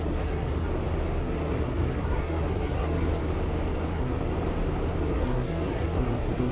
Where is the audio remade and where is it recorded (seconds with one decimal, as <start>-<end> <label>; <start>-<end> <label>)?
0.0-0.7 remade; 0.7-1.2 recorded; 1.2-3.2 remade; 3.2-3.9 recorded; 3.9-4.3 remade; 4.3-5.0 recorded; 5.0-6.5 remade